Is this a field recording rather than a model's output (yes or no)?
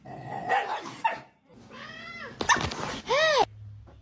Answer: yes